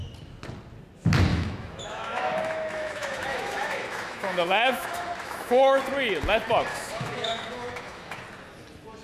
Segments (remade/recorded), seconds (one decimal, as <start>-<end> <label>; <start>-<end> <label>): 0.0-1.3 recorded; 1.3-5.8 remade; 5.8-6.7 recorded; 6.7-8.2 remade; 8.2-9.0 recorded